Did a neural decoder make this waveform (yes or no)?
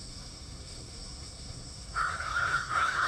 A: yes